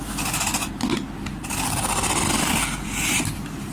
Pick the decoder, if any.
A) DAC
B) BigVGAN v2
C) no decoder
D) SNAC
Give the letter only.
C